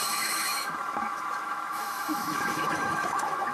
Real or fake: fake